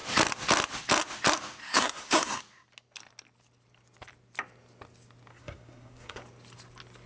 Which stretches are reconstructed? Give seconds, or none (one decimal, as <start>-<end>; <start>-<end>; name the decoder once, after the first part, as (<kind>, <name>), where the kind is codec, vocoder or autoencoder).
1.6-2.4 (codec, SNAC); 5.3-6.2